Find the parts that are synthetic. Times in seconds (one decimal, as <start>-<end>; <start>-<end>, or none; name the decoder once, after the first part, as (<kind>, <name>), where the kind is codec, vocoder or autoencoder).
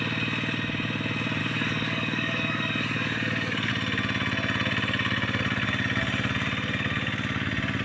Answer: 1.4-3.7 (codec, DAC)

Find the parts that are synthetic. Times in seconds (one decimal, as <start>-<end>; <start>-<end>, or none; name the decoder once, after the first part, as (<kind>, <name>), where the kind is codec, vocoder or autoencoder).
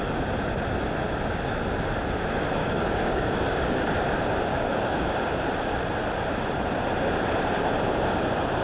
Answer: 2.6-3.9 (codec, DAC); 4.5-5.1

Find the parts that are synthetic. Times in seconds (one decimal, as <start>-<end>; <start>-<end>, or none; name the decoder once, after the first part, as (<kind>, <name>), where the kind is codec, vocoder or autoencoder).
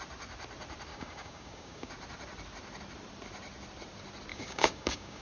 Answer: 0.9-1.9 (codec, DAC); 4.3-5.2